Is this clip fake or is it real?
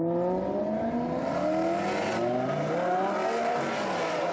real